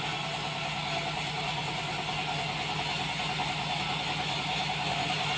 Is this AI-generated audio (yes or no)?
no